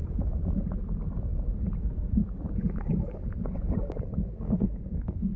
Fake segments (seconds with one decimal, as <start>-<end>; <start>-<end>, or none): 1.8-2.2; 4.4-5.4